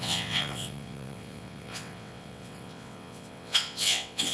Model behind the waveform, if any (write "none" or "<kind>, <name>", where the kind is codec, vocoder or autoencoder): vocoder, WaveNeXt